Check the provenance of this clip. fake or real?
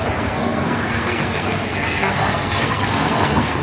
fake